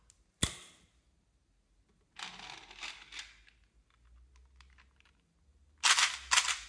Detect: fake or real real